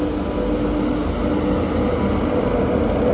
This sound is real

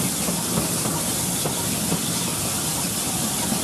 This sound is real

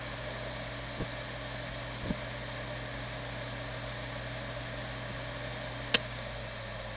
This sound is real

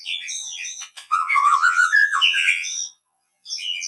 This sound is fake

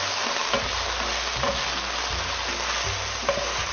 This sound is real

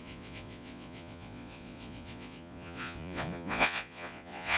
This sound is fake